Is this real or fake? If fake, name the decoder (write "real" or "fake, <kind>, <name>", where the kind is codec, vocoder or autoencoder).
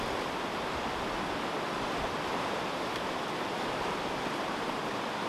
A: fake, vocoder, BigVGAN v2